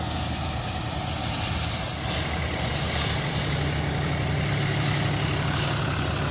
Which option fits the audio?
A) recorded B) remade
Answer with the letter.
A